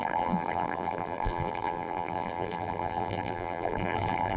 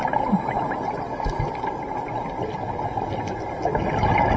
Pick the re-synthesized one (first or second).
first